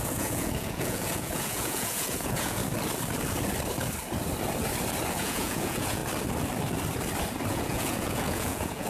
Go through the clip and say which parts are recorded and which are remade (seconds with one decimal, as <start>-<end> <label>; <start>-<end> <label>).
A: 0.0-2.6 remade; 2.6-5.1 recorded; 5.1-6.0 remade; 6.0-7.5 recorded; 7.5-8.9 remade